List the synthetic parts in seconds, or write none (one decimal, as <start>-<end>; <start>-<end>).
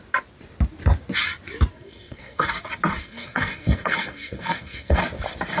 1.7-2.5; 3.0-5.0